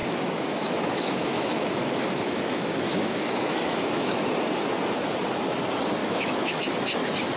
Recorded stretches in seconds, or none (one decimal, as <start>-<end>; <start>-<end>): 4.2-6.0; 6.6-7.4